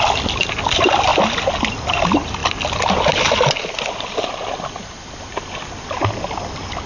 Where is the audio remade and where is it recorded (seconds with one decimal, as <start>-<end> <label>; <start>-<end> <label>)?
0.0-6.9 recorded